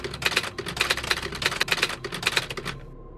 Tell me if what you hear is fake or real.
real